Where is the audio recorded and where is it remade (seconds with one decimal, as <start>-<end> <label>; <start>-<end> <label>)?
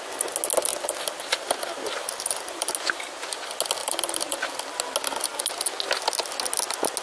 0.0-0.7 recorded; 0.7-2.7 remade; 2.7-3.8 recorded; 3.8-4.4 remade; 4.4-7.0 recorded